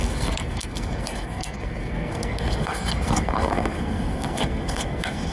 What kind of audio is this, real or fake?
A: fake